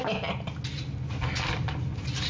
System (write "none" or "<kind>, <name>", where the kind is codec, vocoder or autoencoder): none